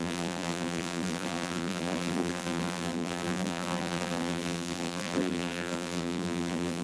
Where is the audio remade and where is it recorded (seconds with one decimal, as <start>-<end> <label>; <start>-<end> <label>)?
0.0-6.8 remade